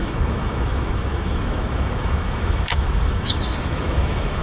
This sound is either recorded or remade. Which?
remade